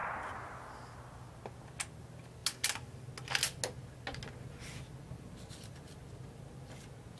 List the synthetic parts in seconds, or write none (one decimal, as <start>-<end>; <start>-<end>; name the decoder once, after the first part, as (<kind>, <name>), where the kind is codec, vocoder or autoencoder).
none